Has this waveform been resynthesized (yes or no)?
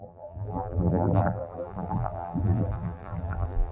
yes